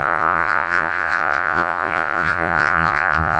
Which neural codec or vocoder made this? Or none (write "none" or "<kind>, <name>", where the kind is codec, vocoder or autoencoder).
vocoder, Vocos